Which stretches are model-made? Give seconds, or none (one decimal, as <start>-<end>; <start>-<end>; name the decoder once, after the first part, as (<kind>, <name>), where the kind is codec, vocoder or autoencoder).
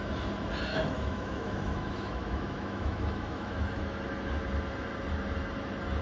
0.7-4.1 (autoencoder, DAC-VAE)